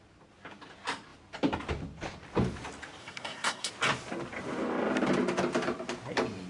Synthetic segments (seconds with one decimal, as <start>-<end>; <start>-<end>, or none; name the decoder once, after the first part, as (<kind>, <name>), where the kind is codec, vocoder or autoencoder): 3.0-3.7 (codec, SNAC)